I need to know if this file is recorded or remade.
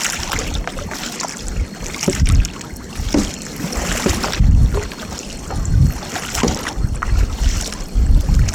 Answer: remade